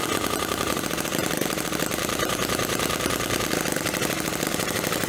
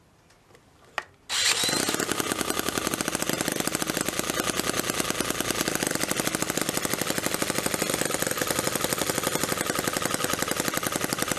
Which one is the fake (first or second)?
first